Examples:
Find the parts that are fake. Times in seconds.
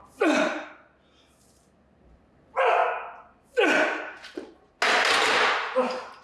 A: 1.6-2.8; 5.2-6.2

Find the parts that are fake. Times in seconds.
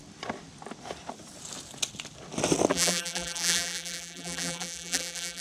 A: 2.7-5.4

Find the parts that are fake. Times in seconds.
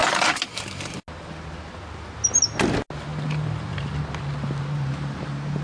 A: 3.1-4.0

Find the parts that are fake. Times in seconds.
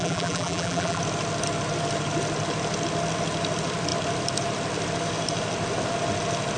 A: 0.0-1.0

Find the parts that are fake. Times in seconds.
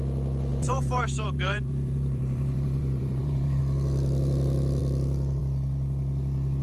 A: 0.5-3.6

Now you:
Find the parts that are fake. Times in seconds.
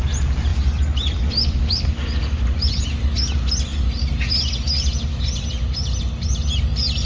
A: 0.5-1.9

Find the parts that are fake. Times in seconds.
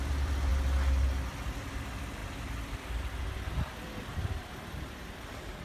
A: 0.0-0.5; 1.3-5.6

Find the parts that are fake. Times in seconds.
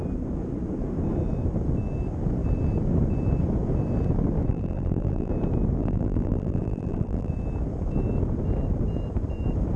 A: 4.5-5.3; 5.8-7.3